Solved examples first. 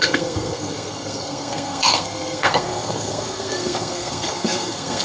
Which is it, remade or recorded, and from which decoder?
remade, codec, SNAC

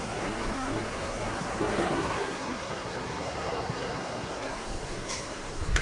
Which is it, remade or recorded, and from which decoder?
remade, codec, SNAC